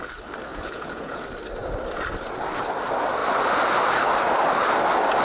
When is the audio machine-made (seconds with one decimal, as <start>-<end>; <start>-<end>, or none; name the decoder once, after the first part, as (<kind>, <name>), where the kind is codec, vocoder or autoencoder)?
0.5-1.2 (vocoder, Vocos)